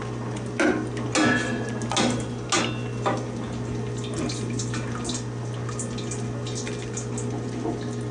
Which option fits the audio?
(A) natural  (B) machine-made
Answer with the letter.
A